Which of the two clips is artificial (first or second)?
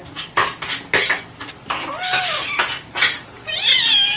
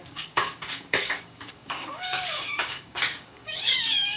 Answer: second